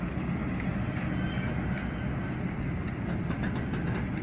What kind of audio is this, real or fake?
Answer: real